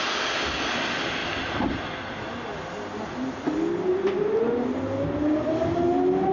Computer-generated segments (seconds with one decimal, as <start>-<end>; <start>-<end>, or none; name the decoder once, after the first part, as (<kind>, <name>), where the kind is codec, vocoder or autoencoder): none